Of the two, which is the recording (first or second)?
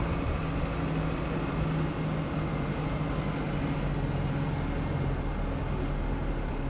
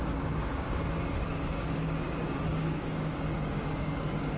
first